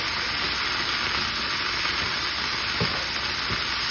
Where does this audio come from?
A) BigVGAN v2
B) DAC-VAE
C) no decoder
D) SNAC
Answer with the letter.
C